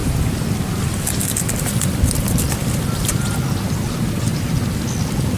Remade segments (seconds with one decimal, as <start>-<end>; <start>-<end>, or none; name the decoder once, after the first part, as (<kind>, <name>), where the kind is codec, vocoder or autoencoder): 0.0-2.0 (vocoder, BigVGAN v2)